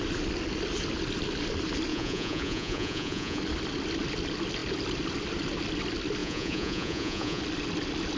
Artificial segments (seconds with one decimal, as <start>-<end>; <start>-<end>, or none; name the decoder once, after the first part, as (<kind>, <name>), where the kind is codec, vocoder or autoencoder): 1.9-3.4 (vocoder, Vocos); 6.2-7.4

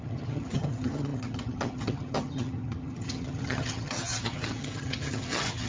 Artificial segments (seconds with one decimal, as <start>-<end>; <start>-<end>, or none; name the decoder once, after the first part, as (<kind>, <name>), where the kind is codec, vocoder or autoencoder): 0.0-5.7 (vocoder, HiFi-GAN)

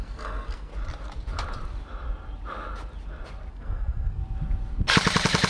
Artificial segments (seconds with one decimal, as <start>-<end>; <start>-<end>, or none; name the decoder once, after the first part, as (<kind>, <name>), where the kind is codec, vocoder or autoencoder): 0.0-0.7 (codec, SNAC); 3.5-4.2

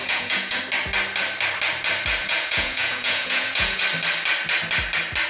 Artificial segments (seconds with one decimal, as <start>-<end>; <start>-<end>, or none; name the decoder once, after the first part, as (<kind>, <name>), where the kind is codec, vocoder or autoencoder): 0.0-0.6 (vocoder, Vocos); 2.2-3.8

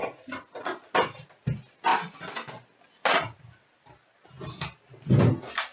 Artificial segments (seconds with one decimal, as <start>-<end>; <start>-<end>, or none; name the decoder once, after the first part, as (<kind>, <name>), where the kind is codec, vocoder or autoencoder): none

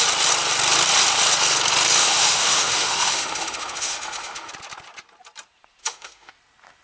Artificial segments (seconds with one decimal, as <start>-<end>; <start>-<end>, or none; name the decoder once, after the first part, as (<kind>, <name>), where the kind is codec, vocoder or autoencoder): 2.0-4.5 (autoencoder, DAC-VAE); 5.8-6.3